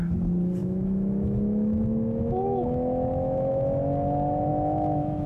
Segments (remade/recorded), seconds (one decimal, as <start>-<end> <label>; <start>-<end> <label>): 0.0-0.6 recorded; 0.6-3.8 remade; 3.8-4.5 recorded; 4.5-5.3 remade